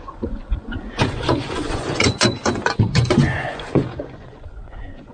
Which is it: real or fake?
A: fake